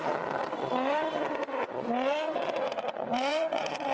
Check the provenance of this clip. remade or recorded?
remade